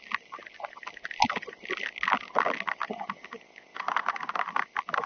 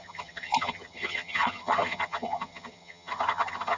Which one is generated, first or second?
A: second